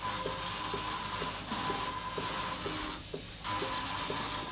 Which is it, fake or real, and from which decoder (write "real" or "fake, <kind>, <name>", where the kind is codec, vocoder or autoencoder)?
real